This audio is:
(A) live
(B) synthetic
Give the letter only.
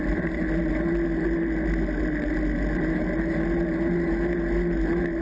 A